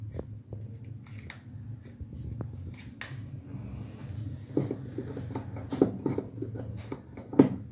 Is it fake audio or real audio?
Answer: real